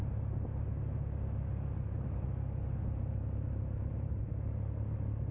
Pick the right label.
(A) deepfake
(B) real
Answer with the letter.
B